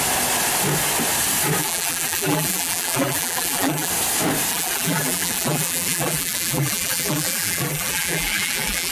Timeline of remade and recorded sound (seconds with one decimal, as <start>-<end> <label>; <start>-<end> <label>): 0.0-1.6 recorded; 1.6-3.9 remade; 3.9-4.5 recorded; 4.5-8.9 remade